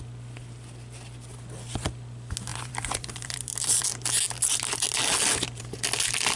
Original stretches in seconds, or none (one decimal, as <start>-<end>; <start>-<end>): 0.0-2.5; 3.8-6.4